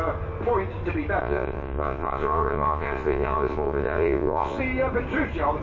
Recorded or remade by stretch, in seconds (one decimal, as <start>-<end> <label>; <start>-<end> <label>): 0.0-1.2 recorded; 1.2-4.6 remade; 4.6-5.6 recorded